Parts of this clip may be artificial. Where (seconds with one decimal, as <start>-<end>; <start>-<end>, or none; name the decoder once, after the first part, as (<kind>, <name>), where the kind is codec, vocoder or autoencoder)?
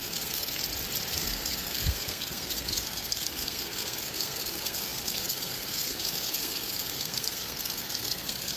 0.0-0.6 (codec, SNAC); 1.1-8.6